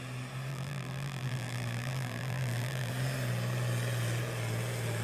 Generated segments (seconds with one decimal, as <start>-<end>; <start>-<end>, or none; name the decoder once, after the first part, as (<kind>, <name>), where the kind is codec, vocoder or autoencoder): 0.5-2.9 (vocoder, BigVGAN v2)